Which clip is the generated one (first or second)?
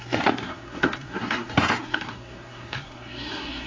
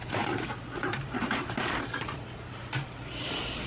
first